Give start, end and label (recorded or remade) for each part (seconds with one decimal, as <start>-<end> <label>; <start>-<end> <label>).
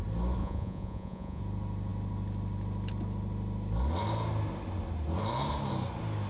0.0-0.4 recorded; 0.4-1.4 remade; 1.4-6.3 recorded